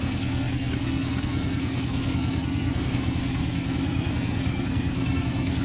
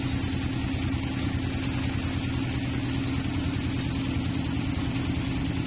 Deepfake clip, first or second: first